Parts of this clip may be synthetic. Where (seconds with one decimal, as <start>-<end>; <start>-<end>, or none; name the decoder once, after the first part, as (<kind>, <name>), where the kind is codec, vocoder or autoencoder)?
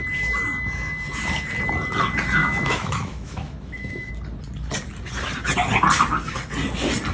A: 2.4-4.1 (autoencoder, DAC-VAE)